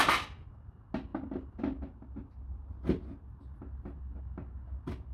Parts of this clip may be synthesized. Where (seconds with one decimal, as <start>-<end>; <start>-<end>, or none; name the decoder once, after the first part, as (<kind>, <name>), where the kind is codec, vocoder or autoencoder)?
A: none